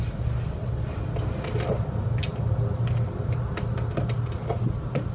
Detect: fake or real real